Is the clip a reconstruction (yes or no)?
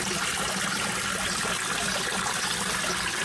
no